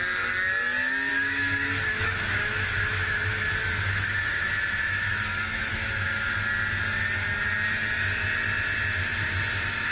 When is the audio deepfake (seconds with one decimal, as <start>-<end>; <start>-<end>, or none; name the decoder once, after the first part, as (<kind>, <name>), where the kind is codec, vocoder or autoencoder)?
1.1-5.1 (autoencoder, DAC-VAE); 5.7-6.3